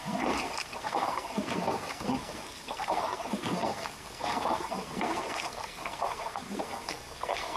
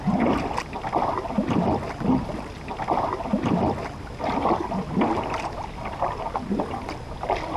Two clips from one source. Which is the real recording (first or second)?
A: second